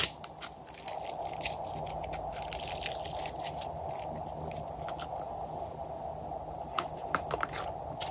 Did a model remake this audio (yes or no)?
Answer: no